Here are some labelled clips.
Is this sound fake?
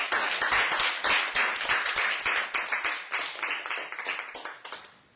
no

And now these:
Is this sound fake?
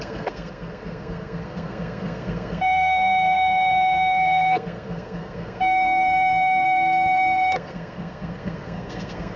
yes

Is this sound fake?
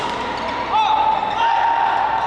no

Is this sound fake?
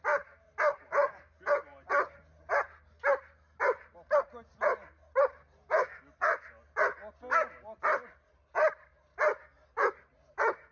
no